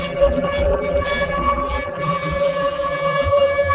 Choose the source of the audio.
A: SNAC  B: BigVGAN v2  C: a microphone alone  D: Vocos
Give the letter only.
B